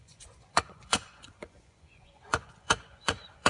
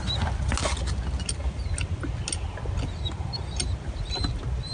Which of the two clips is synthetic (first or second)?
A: first